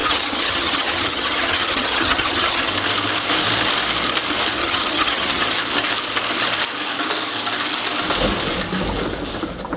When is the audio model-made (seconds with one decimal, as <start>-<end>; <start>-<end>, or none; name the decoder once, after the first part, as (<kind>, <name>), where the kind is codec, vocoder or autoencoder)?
0.0-2.7 (vocoder, HiFi-GAN); 4.6-5.4